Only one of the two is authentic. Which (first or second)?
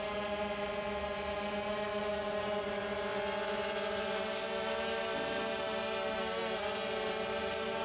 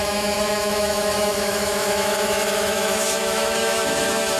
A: first